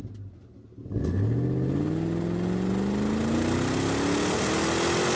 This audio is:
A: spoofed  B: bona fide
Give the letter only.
B